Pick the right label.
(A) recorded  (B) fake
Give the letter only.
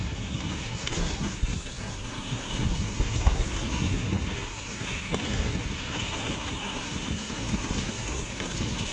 B